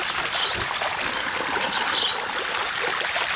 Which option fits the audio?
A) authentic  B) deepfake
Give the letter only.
A